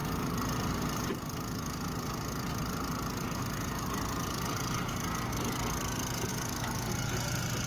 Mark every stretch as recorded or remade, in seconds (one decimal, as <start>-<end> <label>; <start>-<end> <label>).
0.0-6.3 recorded; 6.3-6.9 remade; 6.9-7.7 recorded